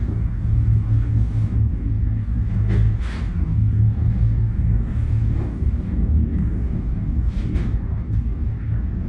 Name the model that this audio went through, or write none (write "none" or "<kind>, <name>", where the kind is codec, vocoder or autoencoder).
codec, DAC